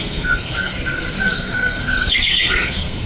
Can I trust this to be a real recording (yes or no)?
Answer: no